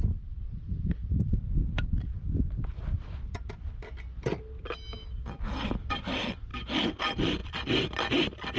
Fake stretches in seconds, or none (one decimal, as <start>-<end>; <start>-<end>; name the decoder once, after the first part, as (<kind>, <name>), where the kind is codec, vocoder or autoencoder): none